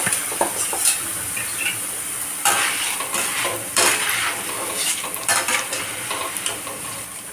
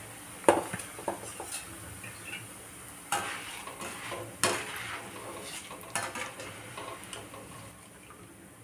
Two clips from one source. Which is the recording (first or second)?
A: second